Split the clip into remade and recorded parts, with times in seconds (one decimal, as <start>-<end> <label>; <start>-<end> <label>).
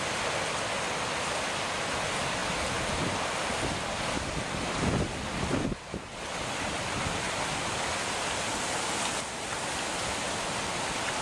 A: 0.0-11.2 recorded